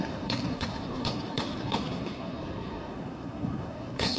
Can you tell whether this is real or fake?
fake